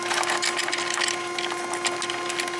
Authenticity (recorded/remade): recorded